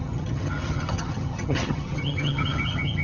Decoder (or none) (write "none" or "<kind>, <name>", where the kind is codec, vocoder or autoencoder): vocoder, HiFi-GAN